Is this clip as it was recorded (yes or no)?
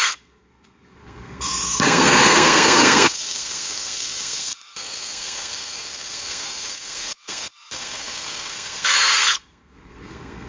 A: no